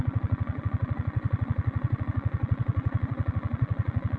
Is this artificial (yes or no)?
yes